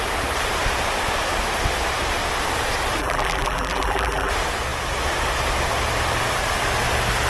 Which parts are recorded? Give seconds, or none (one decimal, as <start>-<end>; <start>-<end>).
0.0-3.0; 4.3-7.3